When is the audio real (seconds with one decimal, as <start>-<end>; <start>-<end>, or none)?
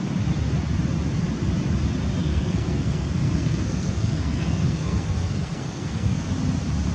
0.0-2.2; 6.3-6.9